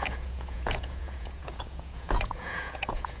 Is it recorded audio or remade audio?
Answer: remade